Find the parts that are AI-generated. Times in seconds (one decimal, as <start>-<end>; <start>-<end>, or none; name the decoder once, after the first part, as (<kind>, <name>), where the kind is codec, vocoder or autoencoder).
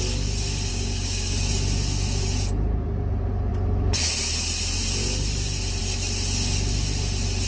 0.7-1.5 (codec, DAC)